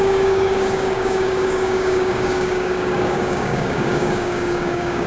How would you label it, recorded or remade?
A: remade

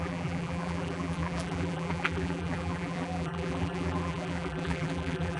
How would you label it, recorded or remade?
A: remade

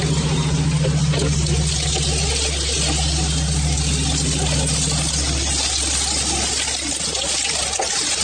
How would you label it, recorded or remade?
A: recorded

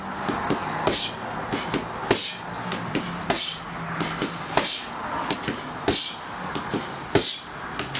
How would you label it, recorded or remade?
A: recorded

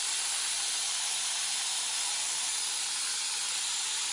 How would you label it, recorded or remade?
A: recorded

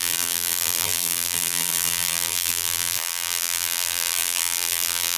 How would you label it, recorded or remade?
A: remade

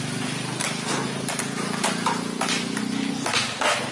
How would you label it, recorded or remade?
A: recorded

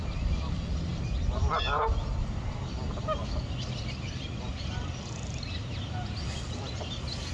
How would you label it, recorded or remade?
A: recorded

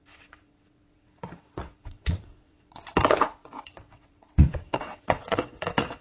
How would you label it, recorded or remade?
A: remade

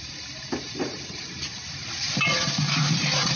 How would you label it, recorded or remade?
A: remade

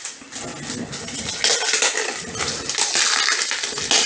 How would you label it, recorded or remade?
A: recorded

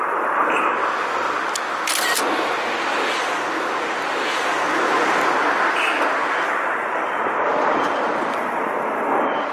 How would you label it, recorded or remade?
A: recorded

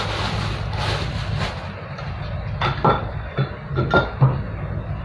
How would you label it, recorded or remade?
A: recorded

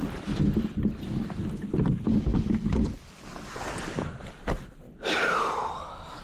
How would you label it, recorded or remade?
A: recorded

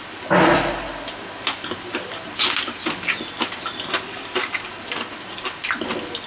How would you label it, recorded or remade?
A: recorded